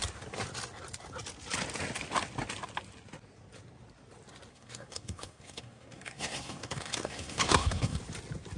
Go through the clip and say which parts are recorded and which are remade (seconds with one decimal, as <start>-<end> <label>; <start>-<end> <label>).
0.0-4.5 recorded; 4.5-8.0 remade; 8.0-8.6 recorded